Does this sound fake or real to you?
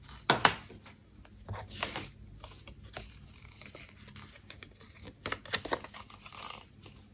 real